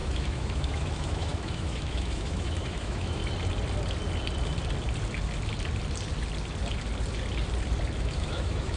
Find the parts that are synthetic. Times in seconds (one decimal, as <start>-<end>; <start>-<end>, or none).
0.0-3.2; 8.0-8.8